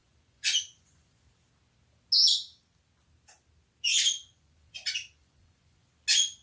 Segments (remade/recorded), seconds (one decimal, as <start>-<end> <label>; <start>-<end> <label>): 0.0-1.2 remade; 1.2-3.9 recorded; 3.9-5.9 remade; 5.9-6.4 recorded